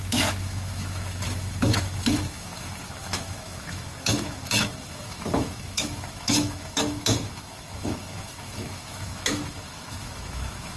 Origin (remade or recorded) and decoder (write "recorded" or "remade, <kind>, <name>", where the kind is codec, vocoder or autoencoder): remade, autoencoder, DAC-VAE